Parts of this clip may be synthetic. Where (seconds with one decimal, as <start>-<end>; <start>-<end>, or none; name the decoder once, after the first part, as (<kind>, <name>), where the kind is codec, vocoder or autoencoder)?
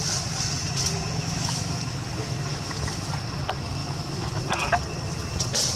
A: 1.2-3.1 (autoencoder, DAC-VAE); 3.8-4.4